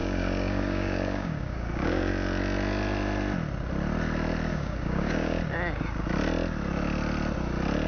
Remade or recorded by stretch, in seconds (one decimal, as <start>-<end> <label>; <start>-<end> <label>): 0.0-2.1 remade; 2.1-4.5 recorded; 4.5-5.4 remade; 5.4-7.9 recorded